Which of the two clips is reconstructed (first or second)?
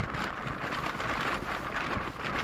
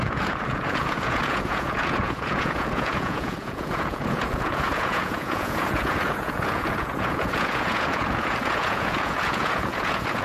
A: second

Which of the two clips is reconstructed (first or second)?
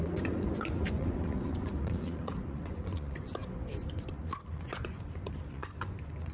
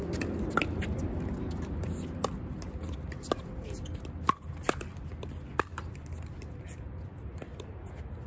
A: first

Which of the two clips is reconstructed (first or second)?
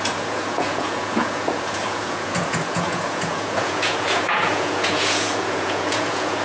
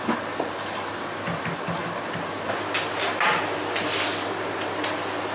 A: first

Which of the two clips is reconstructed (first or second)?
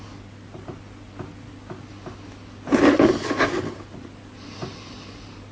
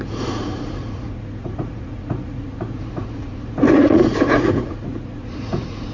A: second